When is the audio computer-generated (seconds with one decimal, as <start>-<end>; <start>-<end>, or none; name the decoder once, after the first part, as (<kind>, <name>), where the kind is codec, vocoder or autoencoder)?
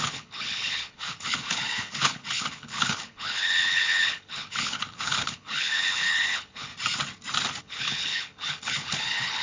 0.0-6.7 (codec, HILCodec); 7.6-9.4